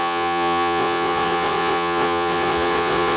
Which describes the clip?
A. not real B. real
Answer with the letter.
A